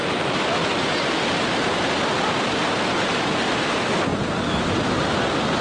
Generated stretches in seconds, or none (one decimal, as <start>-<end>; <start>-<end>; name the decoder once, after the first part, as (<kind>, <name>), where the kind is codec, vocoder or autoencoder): none

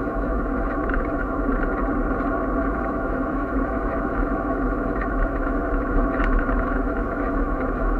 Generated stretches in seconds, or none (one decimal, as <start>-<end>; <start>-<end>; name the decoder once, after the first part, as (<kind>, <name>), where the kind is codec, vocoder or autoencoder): 0.0-1.5 (autoencoder, DAC-VAE); 2.6-8.0